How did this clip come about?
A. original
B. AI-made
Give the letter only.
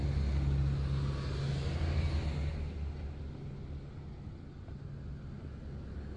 A